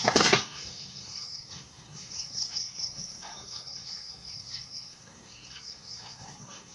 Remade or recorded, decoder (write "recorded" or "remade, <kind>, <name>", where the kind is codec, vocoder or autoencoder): remade, codec, SNAC